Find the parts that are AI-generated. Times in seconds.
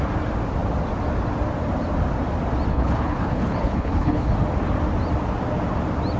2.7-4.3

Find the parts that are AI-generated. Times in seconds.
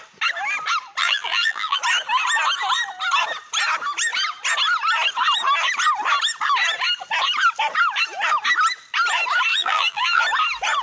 1.0-1.8; 9.5-10.2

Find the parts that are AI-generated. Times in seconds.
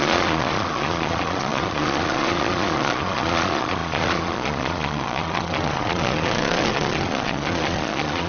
0.0-8.3